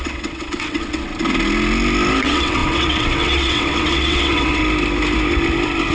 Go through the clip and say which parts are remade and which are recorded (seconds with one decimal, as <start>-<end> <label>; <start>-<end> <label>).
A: 0.0-1.1 remade; 1.1-2.2 recorded; 2.2-4.6 remade; 4.6-5.9 recorded